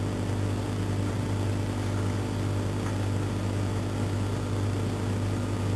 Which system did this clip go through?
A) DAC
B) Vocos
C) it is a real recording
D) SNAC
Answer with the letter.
C